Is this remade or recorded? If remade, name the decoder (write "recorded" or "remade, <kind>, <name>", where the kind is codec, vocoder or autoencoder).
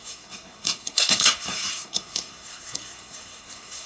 remade, codec, SNAC